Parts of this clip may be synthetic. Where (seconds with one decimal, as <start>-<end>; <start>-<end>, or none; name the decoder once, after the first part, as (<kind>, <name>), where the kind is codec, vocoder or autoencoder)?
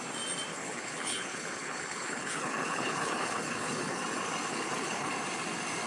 0.5-4.0 (codec, HILCodec); 4.5-5.1